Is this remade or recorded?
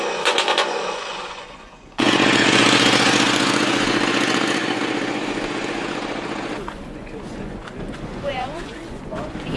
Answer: remade